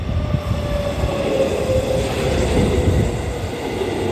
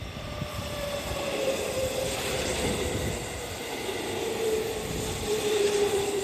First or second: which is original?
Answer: first